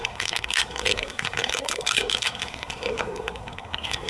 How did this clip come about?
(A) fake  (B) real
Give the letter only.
A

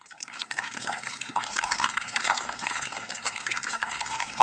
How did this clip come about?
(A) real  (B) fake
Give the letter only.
B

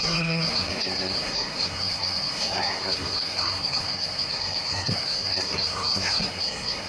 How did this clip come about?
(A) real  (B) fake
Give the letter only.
B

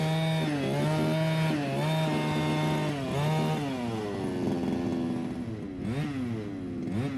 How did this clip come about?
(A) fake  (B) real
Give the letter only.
B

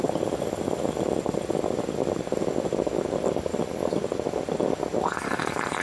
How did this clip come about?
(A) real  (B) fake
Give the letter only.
A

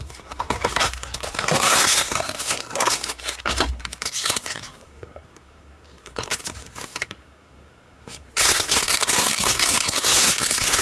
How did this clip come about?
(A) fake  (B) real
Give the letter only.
A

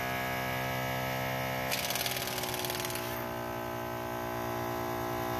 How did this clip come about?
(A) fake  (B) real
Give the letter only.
B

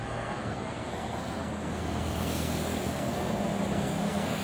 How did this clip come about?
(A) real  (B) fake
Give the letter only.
B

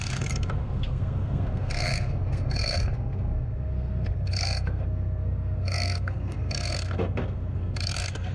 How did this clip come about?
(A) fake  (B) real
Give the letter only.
A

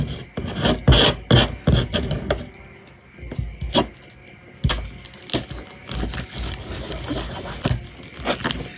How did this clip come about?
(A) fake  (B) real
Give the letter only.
B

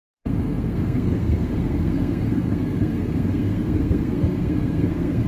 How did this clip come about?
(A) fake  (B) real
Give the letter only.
A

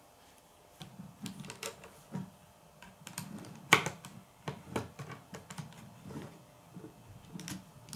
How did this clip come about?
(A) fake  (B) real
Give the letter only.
B